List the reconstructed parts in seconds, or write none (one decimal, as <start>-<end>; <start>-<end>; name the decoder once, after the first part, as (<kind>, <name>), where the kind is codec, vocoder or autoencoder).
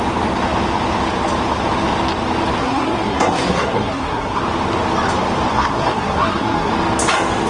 2.6-4.4 (codec, SNAC); 5.5-6.7